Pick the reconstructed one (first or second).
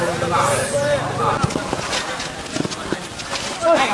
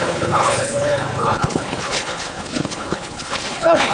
second